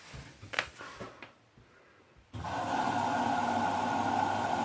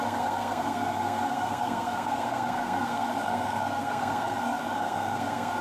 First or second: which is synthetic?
second